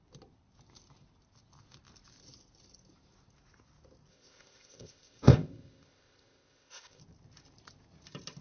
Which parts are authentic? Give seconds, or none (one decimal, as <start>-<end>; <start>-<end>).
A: 0.0-4.1; 7.0-8.4